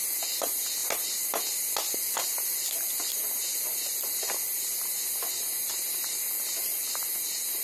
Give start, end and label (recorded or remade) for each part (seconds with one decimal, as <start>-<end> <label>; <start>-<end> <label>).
0.0-7.6 recorded